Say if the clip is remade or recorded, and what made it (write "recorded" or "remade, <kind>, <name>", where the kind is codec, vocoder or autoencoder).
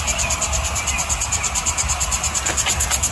recorded